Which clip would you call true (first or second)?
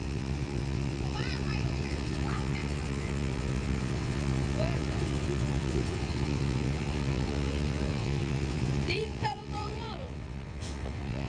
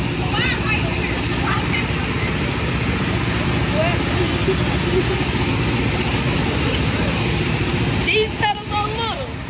second